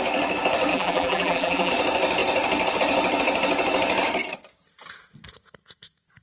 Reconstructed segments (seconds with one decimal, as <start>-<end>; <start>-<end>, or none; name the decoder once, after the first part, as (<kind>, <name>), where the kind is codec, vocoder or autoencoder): 0.7-1.7 (vocoder, BigVGAN v2)